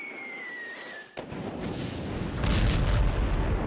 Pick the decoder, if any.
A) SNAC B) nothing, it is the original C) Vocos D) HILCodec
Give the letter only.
B